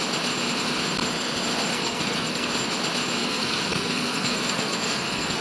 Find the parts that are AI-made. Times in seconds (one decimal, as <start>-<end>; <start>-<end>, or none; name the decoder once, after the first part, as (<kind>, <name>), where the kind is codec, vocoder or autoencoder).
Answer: 1.7-2.5 (codec, SNAC); 3.2-5.4